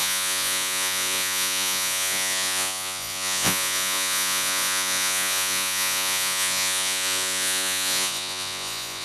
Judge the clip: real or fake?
fake